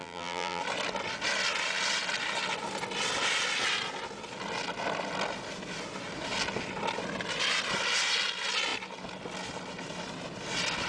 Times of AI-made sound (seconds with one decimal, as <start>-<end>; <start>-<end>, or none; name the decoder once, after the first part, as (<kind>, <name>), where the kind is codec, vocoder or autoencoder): 0.0-0.6 (vocoder, BigVGAN v2)